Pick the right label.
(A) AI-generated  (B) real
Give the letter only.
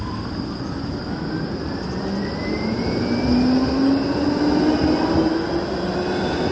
B